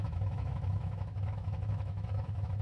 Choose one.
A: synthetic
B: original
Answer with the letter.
A